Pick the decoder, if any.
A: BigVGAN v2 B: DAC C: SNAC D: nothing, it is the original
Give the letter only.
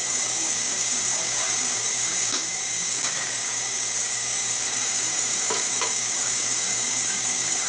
B